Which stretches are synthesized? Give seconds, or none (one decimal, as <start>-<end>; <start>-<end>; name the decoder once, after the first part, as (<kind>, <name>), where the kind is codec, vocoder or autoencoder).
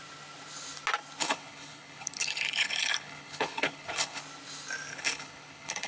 1.2-4.2 (codec, HILCodec); 4.9-5.9